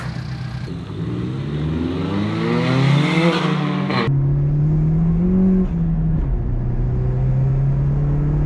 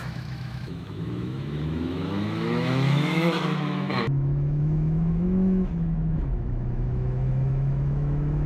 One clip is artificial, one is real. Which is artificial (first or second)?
second